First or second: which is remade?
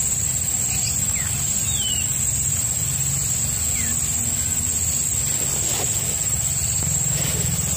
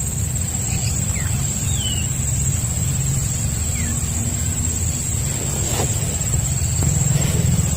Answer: second